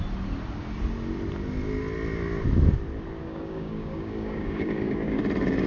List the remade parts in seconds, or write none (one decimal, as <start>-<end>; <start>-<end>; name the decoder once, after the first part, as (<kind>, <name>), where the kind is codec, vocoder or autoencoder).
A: 3.2-5.2 (codec, DAC)